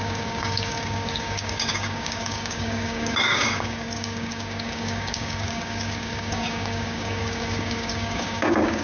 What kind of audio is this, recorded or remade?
remade